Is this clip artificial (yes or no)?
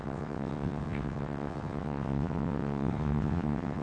yes